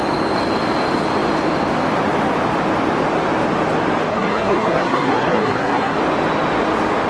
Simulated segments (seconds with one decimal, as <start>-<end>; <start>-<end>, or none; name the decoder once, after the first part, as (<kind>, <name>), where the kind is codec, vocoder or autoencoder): 4.1-6.0 (codec, SNAC)